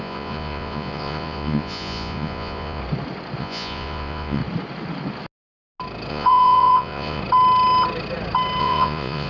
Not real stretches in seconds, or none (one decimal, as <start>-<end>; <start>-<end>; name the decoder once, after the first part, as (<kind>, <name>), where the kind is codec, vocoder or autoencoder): 0.0-2.8 (vocoder, Vocos); 3.4-4.4; 6.1-7.2; 8.6-9.3